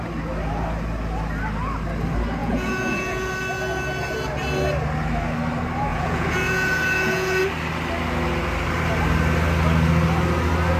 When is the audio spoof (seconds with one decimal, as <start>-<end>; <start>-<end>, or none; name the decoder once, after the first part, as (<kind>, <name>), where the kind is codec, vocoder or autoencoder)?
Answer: 2.4-3.3 (vocoder, Vocos); 5.9-7.4